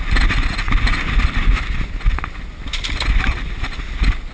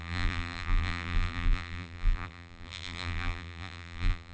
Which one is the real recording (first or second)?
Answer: first